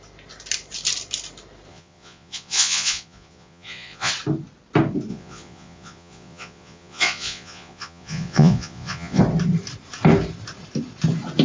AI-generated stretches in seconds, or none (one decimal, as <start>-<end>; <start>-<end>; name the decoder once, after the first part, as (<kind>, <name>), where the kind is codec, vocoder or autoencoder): 1.7-4.1 (vocoder, Vocos); 5.1-9.2